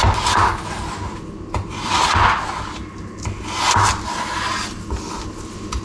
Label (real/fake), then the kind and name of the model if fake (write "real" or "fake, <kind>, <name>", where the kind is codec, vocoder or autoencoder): real